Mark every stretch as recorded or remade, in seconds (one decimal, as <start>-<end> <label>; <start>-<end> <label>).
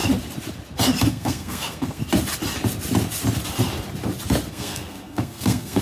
0.0-1.1 recorded; 1.1-2.0 remade; 2.0-4.5 recorded; 4.5-5.8 remade